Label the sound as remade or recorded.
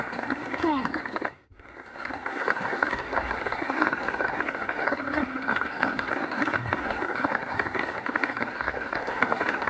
remade